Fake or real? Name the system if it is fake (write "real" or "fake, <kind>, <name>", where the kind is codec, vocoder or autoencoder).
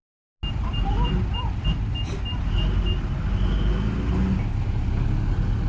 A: real